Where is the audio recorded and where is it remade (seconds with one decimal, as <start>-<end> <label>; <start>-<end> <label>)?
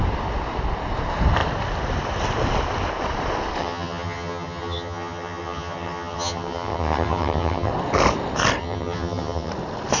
0.0-3.6 recorded; 3.6-7.7 remade; 7.7-8.6 recorded; 8.6-9.5 remade; 9.5-10.0 recorded